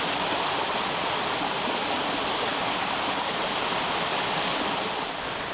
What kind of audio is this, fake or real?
real